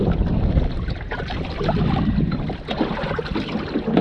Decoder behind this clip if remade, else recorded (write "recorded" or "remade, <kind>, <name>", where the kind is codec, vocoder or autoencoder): recorded